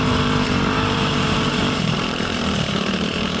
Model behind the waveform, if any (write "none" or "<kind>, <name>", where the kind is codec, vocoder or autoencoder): vocoder, BigVGAN v2